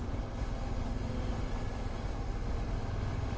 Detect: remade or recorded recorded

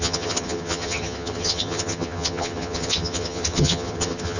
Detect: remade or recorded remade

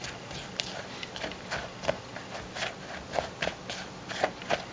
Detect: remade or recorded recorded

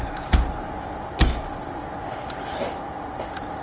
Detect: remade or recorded recorded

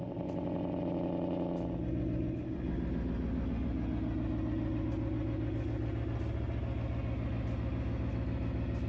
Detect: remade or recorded recorded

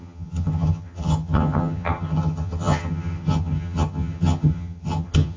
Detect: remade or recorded remade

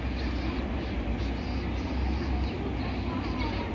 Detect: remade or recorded recorded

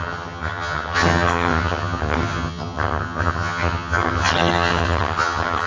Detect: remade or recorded remade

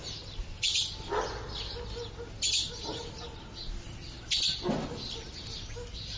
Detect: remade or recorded recorded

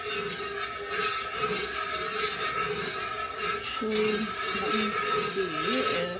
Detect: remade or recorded recorded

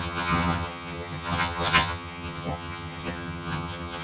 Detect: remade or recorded remade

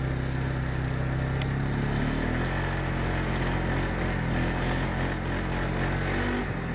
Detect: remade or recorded recorded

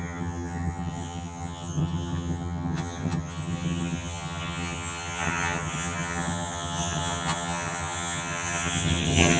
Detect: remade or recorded remade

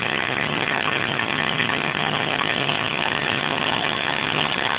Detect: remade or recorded remade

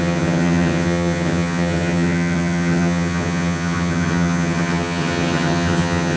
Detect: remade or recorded remade